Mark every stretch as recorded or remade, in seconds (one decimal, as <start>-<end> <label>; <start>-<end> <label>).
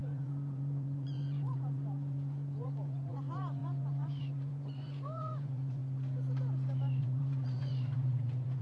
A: 0.0-5.8 remade; 5.8-7.0 recorded; 7.0-8.6 remade